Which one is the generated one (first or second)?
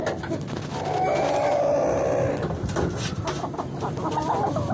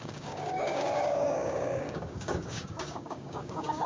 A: second